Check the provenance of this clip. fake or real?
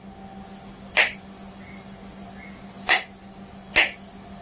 real